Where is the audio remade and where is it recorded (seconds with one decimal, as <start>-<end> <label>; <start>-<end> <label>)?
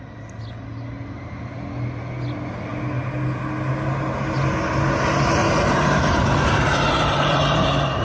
0.0-5.4 recorded; 5.4-8.0 remade